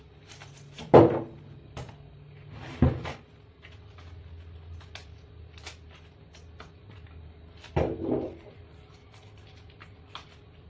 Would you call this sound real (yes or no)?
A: yes